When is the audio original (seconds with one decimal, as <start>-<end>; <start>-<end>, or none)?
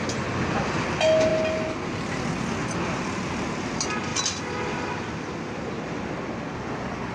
0.0-7.1